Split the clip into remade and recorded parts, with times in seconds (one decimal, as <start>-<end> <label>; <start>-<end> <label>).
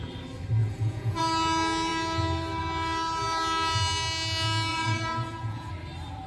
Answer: 0.0-0.6 recorded; 0.6-1.2 remade; 1.2-4.7 recorded; 4.7-5.7 remade; 5.7-6.3 recorded